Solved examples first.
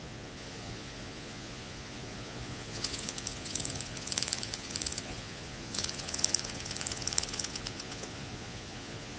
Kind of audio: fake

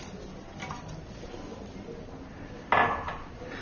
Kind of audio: real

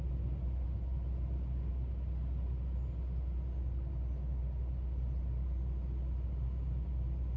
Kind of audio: real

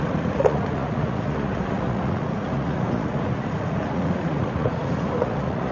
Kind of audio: fake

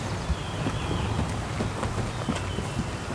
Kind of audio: real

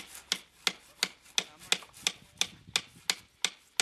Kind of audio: real